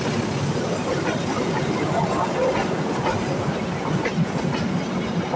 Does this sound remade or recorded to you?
recorded